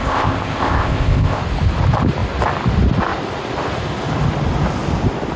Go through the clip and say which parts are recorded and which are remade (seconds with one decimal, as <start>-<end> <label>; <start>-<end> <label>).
0.0-1.4 remade; 1.4-5.4 recorded

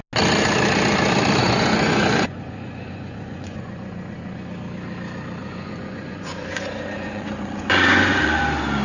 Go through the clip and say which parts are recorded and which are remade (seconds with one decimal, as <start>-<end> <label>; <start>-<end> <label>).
0.0-1.4 recorded; 1.4-4.5 remade; 4.5-5.4 recorded; 5.4-8.4 remade; 8.4-8.8 recorded

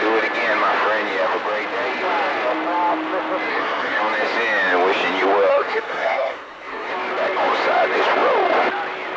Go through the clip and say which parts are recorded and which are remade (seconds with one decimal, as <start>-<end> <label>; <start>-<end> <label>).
0.0-3.5 recorded; 3.5-4.0 remade; 4.0-5.5 recorded; 5.5-6.9 remade; 6.9-9.2 recorded

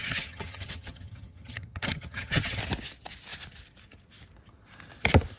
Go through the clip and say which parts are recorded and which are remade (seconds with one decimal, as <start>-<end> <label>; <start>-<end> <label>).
0.0-2.6 remade; 2.6-5.4 recorded

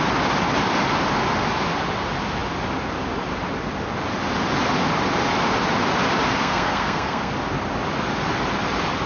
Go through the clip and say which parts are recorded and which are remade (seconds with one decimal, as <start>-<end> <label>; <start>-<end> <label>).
0.0-6.4 recorded; 6.4-7.3 remade; 7.3-9.1 recorded

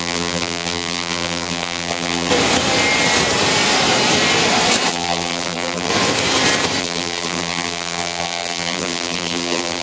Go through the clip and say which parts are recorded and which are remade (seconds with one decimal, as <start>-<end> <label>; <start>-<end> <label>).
0.0-2.3 remade; 2.3-4.9 recorded; 4.9-5.9 remade; 5.9-6.8 recorded; 6.8-9.8 remade

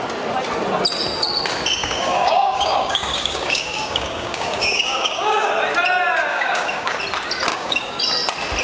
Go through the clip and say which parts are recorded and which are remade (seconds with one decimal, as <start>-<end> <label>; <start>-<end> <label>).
0.0-1.8 recorded; 1.8-5.5 remade; 5.5-6.3 recorded; 6.3-7.0 remade; 7.0-7.5 recorded; 7.5-8.0 remade; 8.0-8.6 recorded

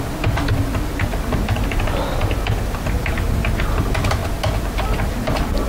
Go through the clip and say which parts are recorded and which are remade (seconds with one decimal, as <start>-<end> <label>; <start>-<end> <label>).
0.0-5.7 recorded